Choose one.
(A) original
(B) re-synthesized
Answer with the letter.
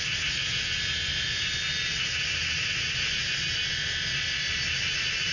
A